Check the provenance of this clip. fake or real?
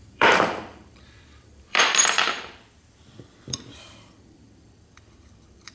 fake